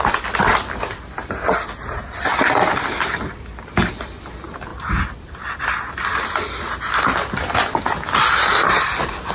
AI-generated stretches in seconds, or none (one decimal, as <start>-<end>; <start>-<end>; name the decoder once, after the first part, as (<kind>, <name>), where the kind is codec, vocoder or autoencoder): 2.3-4.3 (vocoder, BigVGAN v2); 4.7-5.6